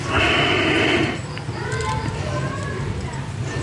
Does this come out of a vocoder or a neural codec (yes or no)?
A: no